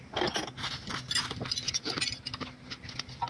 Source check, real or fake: real